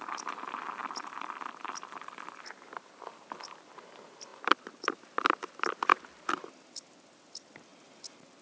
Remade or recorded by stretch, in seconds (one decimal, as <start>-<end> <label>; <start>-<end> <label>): 0.0-0.8 recorded; 0.8-2.4 remade; 2.4-4.3 recorded; 4.3-5.0 remade; 5.0-8.4 recorded